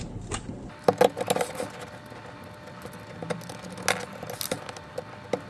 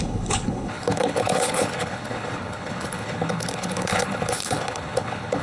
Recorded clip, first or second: first